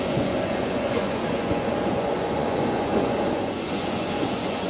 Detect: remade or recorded remade